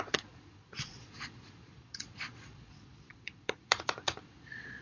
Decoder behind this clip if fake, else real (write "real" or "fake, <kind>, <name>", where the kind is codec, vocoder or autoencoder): fake, vocoder, Vocos